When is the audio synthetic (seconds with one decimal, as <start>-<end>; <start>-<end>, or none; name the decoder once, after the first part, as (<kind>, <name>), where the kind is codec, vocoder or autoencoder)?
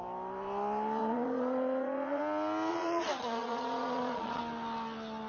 1.0-2.2 (vocoder, Vocos); 2.7-4.4